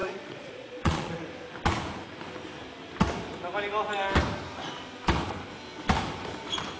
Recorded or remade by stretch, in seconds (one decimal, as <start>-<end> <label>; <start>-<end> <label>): 0.0-1.1 remade; 1.1-6.8 recorded